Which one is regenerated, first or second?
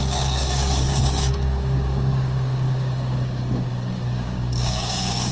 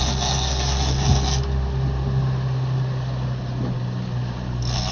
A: first